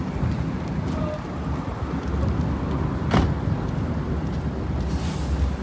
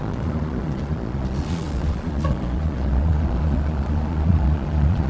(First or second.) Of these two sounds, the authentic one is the first